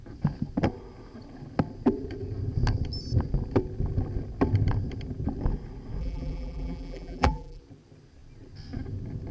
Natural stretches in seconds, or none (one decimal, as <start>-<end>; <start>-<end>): 0.0-6.0; 7.6-9.3

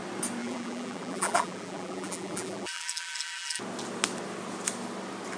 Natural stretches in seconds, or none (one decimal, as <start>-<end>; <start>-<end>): 0.0-0.4; 3.6-5.4

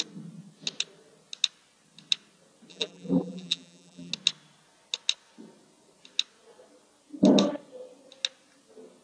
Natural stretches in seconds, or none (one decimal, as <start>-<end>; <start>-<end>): 0.0-2.7; 4.1-9.0

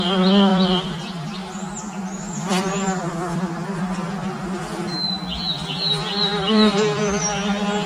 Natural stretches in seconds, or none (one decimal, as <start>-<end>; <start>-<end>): 0.0-0.5; 5.1-6.3; 7.0-7.9

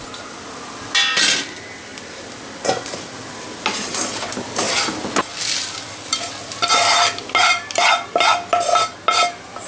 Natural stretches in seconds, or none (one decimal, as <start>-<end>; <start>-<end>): 0.0-9.7

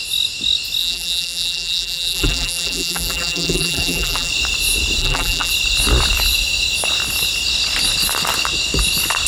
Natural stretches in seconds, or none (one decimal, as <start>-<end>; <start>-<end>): 0.0-0.8; 4.3-5.0; 5.5-9.3

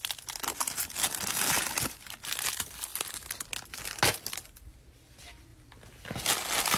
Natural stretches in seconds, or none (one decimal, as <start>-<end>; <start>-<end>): 0.0-6.8